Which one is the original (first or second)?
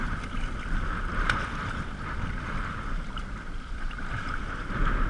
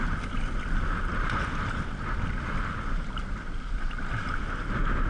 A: second